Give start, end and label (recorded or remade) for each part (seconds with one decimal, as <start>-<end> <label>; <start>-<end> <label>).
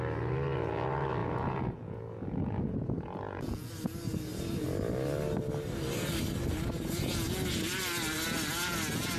0.0-1.2 recorded; 1.2-3.7 remade; 3.7-9.2 recorded